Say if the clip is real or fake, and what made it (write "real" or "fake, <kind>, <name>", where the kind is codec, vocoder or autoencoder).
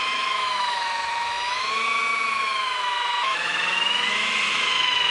fake, autoencoder, DAC-VAE